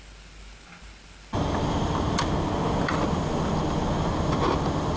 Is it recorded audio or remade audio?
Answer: recorded